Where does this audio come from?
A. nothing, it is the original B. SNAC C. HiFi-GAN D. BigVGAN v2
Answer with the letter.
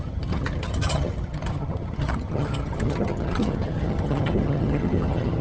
C